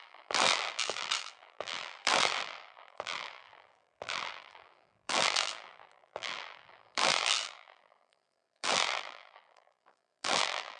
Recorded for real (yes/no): no